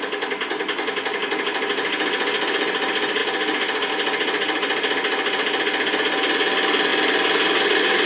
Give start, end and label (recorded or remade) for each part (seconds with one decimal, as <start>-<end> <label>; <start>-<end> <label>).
0.0-8.1 recorded